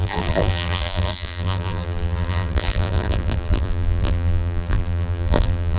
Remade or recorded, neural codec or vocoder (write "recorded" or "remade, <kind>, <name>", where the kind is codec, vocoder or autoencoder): remade, vocoder, BigVGAN v2